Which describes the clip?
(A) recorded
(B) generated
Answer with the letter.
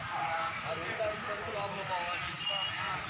A